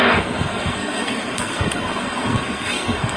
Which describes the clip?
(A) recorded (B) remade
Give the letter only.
B